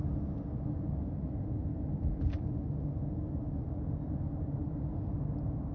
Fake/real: real